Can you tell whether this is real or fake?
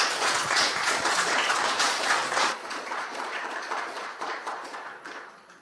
fake